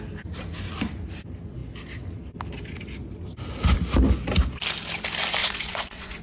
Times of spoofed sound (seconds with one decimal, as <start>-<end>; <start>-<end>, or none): 5.4-6.2